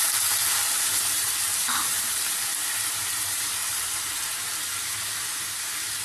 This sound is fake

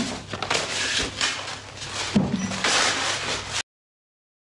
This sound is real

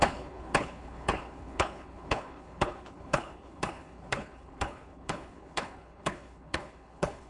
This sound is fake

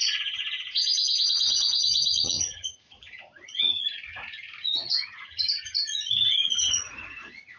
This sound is fake